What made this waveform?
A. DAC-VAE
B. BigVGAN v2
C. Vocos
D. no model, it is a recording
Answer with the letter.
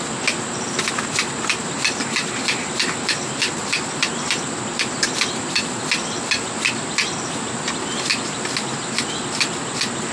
D